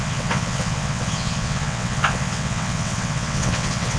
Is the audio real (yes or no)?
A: no